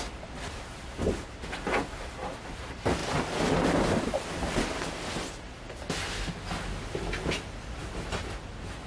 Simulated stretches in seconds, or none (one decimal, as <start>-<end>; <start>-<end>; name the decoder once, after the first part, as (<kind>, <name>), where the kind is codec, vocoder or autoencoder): none

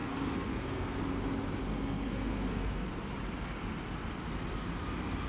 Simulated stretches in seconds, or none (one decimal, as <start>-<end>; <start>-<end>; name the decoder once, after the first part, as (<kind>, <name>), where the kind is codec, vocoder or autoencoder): 0.0-1.0 (codec, SNAC); 1.6-2.9

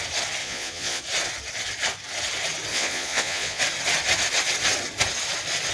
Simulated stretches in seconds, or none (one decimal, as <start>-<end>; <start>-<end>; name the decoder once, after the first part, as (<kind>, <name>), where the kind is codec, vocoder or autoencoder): 0.4-1.0 (vocoder, Vocos); 2.7-3.6

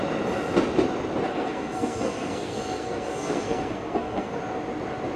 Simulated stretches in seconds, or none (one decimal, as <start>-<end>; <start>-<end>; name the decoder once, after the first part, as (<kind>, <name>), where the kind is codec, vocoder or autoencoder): 1.3-4.4 (codec, SNAC)

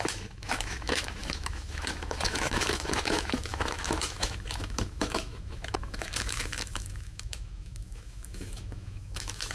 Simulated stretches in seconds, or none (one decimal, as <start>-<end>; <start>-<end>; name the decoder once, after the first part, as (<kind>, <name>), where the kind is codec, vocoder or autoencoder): 0.0-9.5 (autoencoder, DAC-VAE)